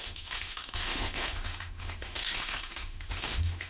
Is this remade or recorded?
remade